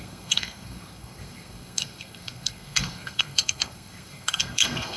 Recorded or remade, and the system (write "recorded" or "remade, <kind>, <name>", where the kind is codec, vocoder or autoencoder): remade, codec, SNAC